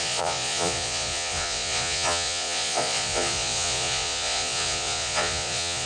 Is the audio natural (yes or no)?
no